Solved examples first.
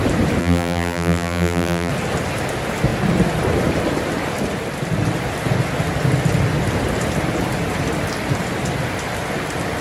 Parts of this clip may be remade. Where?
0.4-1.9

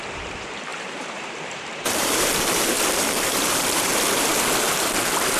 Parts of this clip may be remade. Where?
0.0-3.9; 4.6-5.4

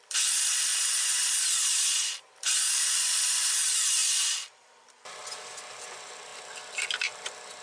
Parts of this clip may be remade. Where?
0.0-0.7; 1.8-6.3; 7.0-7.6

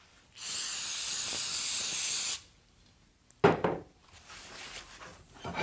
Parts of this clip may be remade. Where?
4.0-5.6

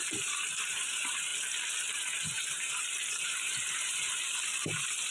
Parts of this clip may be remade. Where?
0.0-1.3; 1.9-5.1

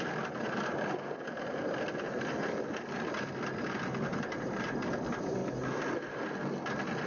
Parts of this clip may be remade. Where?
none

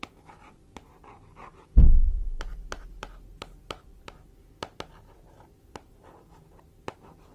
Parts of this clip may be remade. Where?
none

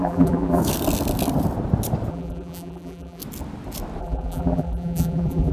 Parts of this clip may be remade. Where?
0.0-0.6; 2.1-3.2; 4.0-5.5